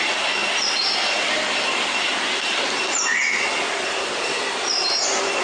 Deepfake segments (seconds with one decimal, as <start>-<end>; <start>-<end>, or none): none